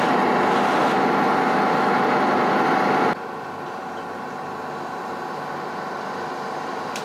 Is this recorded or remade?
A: recorded